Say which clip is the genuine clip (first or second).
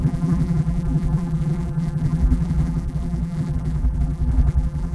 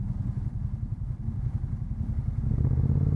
second